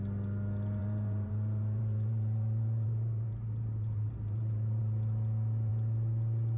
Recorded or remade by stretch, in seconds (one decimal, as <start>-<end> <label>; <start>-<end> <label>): 0.0-0.8 recorded; 0.8-4.8 remade; 4.8-6.6 recorded